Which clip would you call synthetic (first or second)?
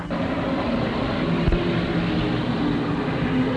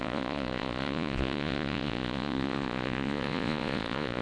second